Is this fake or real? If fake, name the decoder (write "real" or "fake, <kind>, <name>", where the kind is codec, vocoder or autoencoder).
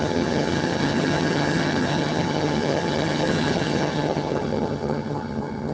fake, vocoder, HiFi-GAN